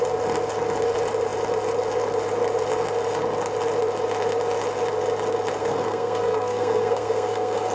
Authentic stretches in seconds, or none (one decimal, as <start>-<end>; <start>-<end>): 0.0-5.6